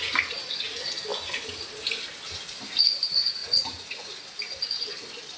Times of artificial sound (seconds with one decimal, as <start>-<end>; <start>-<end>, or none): 3.4-4.2